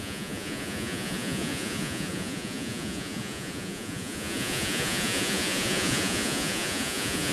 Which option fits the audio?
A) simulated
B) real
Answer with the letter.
A